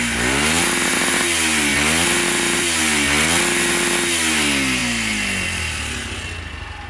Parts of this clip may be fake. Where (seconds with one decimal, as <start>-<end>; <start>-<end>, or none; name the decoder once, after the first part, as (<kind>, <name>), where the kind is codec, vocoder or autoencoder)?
1.7-2.8 (vocoder, BigVGAN v2)